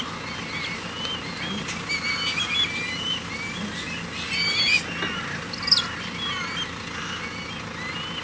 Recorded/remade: recorded